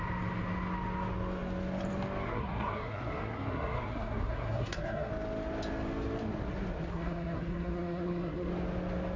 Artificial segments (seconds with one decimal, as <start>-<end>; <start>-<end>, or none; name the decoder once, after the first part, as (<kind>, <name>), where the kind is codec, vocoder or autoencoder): 2.3-5.1 (codec, SNAC); 6.9-8.5